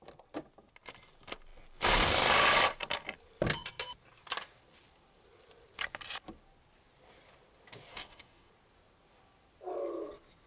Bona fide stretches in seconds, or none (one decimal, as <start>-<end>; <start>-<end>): 0.0-7.9; 8.5-10.5